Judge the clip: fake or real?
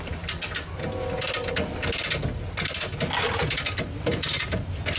real